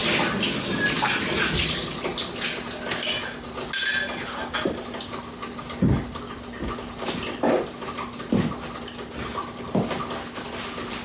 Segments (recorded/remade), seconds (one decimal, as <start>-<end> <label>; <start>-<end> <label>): 0.0-11.0 recorded